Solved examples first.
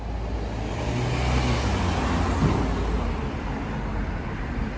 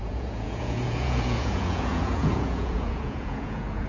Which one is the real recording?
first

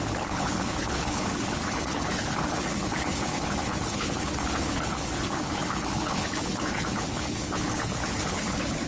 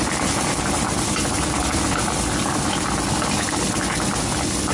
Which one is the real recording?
second